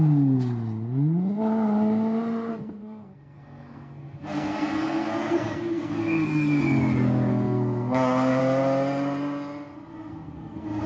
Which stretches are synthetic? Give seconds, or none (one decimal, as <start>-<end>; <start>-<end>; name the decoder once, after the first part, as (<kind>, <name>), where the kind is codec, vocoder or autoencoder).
2.5-6.6 (codec, SNAC); 7.3-8.4; 9.9-10.9